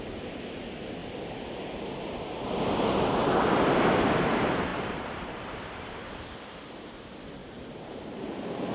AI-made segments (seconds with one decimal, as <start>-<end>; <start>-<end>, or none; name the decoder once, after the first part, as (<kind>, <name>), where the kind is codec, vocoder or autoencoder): 4.7-6.1 (vocoder, BigVGAN v2); 7.4-8.7

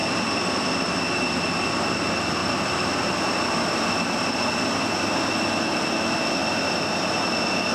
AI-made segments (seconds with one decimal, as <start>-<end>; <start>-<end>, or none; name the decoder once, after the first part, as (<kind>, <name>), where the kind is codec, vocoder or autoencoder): 0.0-1.0 (vocoder, BigVGAN v2); 2.4-3.6